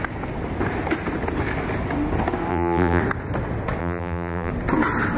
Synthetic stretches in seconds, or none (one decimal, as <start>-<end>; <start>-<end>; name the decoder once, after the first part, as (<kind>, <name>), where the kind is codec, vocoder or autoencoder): 2.5-3.0 (vocoder, BigVGAN v2); 3.8-4.5